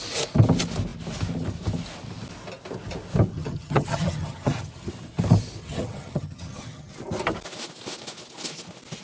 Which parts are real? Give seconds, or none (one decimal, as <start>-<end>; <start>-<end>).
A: 0.0-3.3; 4.9-5.6; 6.9-9.0